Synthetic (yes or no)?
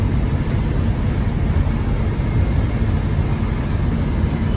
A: no